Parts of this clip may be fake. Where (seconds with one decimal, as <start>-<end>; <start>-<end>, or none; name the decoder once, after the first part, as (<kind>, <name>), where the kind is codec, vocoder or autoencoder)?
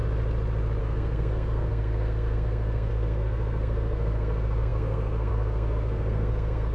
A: 0.8-6.7 (codec, SNAC)